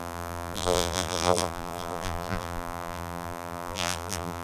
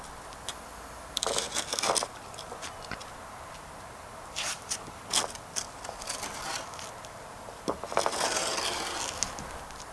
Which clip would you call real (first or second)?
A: second